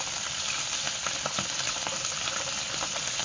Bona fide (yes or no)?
yes